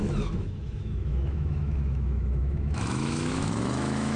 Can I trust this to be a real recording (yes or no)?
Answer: no